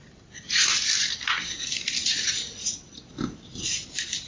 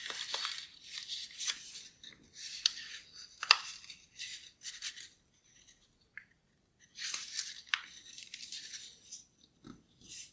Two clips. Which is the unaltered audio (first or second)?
first